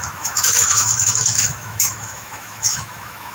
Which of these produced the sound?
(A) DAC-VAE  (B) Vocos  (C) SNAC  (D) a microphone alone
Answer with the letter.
A